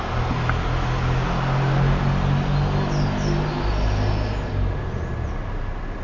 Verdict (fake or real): real